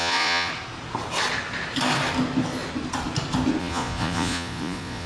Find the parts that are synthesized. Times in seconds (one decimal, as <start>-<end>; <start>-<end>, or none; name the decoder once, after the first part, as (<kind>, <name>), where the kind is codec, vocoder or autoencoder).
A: 0.0-0.5 (vocoder, Vocos); 3.6-5.1